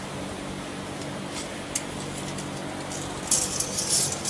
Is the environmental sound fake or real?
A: real